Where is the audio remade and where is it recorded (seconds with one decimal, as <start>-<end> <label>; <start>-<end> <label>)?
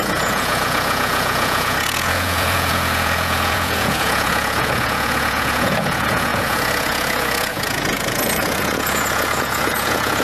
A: 0.0-10.2 remade